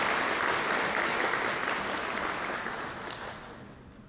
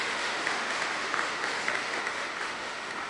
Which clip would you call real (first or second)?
first